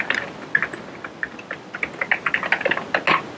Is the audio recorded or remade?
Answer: recorded